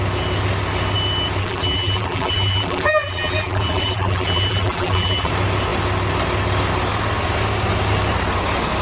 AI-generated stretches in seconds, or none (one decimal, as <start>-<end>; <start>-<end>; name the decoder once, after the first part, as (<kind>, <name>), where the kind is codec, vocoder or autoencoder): 1.4-5.3 (vocoder, BigVGAN v2)